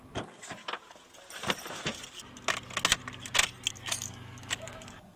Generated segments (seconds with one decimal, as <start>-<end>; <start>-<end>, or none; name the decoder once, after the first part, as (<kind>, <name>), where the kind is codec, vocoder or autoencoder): 0.0-0.6 (codec, DAC); 3.7-5.2